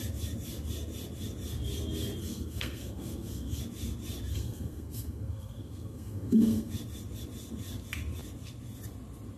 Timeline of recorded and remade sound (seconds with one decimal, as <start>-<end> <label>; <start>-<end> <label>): 0.0-2.2 recorded; 2.2-3.6 remade; 3.6-4.3 recorded; 4.3-6.7 remade; 6.7-9.4 recorded